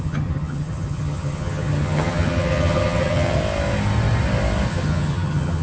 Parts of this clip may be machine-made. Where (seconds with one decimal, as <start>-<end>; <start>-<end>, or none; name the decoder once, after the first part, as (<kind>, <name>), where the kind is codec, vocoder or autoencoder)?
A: 0.0-3.4 (vocoder, HiFi-GAN); 4.7-5.6